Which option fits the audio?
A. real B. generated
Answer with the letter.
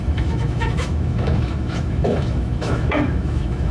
B